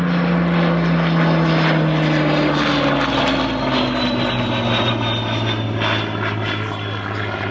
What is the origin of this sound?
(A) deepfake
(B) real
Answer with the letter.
B